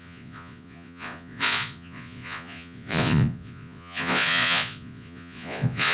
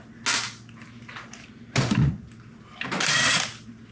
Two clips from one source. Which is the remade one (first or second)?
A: first